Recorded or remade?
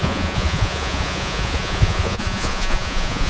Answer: remade